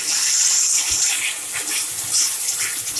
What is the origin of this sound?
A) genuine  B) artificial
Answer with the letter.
A